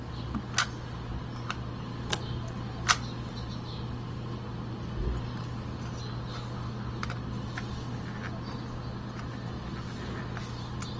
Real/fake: real